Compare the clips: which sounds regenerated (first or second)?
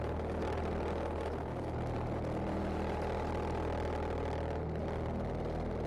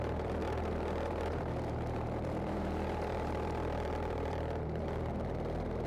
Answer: second